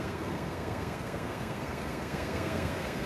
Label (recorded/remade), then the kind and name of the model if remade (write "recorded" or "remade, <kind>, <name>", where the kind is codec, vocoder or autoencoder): remade, codec, SNAC